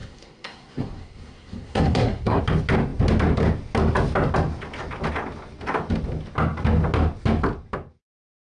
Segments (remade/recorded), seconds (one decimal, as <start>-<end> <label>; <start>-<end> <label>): 0.0-2.4 remade; 2.4-8.5 recorded